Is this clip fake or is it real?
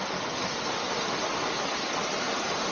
real